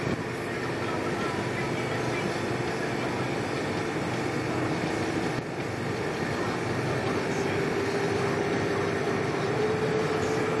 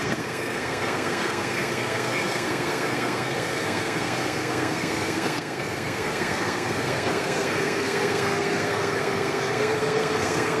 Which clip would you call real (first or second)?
first